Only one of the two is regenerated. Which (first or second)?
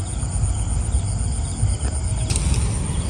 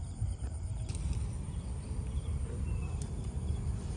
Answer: second